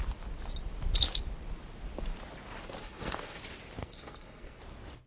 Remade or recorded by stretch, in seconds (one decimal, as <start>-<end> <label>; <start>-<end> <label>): 0.0-2.8 recorded; 2.8-3.4 remade; 3.4-3.8 recorded; 3.8-4.6 remade; 4.6-5.1 recorded